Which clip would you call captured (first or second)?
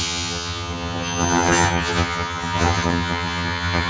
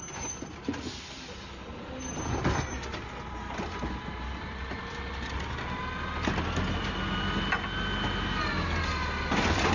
second